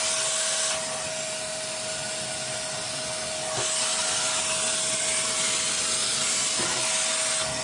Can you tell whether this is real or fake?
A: real